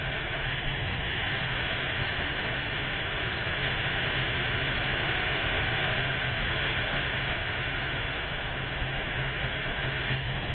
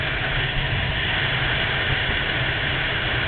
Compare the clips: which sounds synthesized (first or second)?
first